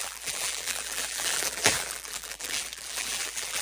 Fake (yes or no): yes